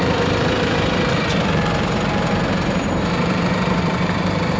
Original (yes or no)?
no